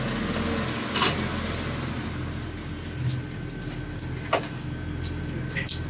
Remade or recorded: recorded